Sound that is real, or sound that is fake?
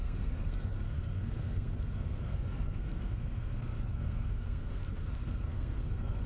fake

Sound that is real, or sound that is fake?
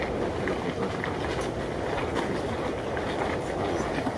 real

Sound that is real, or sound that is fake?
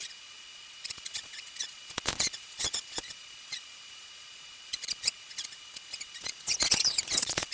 fake